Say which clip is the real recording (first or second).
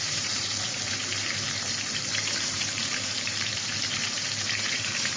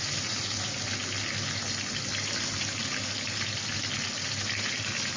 second